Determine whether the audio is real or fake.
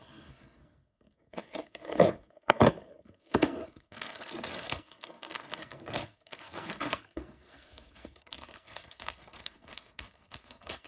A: fake